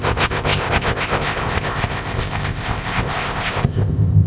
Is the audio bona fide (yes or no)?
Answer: no